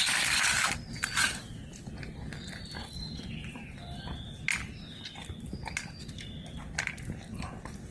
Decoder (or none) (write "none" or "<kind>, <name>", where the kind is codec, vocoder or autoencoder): none